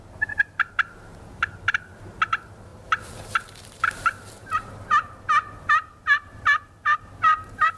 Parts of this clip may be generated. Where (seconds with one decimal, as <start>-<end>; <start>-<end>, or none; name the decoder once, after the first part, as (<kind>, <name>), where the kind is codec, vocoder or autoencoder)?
0.0-7.8 (vocoder, BigVGAN v2)